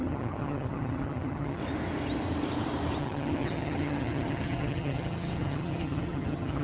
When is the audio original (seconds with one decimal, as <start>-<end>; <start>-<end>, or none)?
1.6-3.0